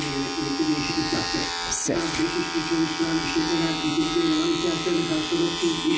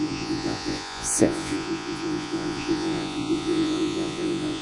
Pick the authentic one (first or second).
first